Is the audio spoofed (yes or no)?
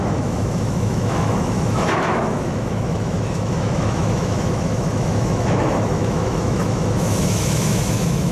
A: yes